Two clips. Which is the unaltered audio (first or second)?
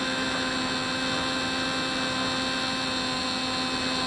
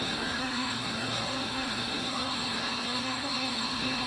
first